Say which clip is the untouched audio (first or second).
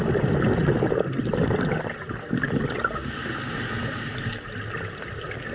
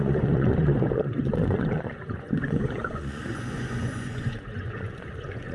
first